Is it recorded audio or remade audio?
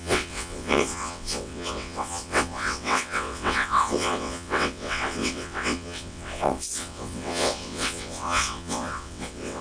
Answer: remade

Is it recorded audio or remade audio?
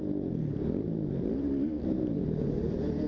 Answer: recorded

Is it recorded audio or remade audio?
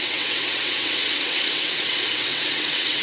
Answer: remade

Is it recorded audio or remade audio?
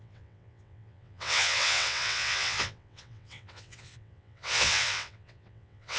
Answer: remade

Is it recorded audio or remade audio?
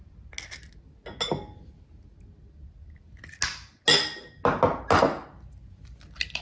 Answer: recorded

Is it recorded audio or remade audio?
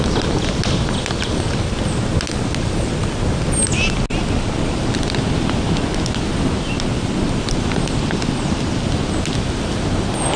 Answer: recorded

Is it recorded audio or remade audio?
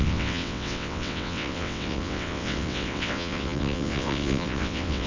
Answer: remade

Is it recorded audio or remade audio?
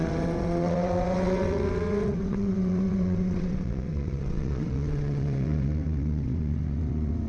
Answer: remade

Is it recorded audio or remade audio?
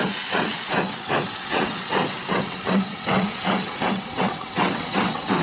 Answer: remade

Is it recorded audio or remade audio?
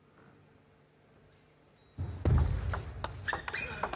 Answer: recorded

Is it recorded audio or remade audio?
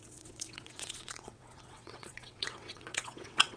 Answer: remade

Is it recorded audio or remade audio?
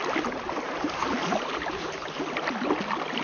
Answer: recorded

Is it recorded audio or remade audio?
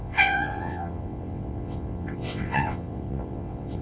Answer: remade